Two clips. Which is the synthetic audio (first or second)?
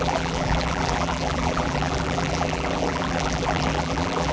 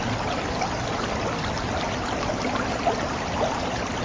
first